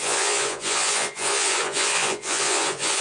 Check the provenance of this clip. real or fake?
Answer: fake